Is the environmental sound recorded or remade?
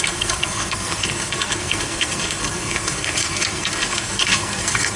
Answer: remade